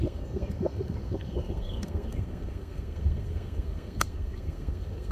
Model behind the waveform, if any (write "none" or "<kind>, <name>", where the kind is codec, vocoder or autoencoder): codec, SNAC